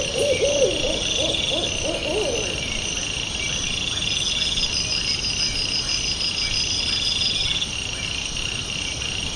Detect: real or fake real